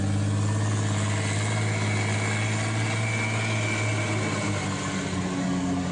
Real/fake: real